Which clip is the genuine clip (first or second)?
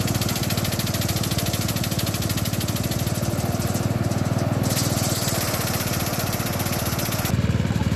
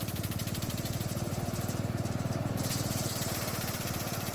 first